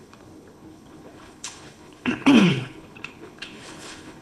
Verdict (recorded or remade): remade